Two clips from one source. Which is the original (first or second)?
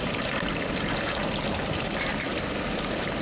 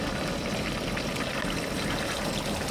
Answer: second